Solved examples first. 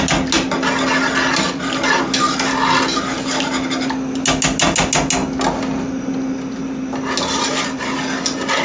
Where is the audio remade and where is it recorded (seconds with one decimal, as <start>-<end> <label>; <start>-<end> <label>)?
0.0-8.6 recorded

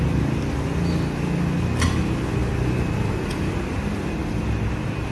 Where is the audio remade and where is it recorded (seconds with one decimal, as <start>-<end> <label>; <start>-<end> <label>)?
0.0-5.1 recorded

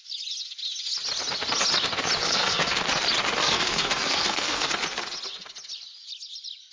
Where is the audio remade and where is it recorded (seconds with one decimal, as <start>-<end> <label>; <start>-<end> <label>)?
0.0-2.2 recorded; 2.2-2.8 remade; 2.8-3.4 recorded; 3.4-4.7 remade; 4.7-6.7 recorded